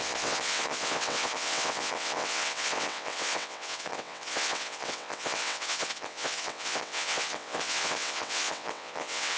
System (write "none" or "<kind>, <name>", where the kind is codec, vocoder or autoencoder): vocoder, WaveNeXt